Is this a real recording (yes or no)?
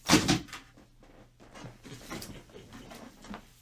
no